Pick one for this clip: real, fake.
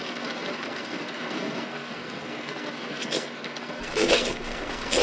fake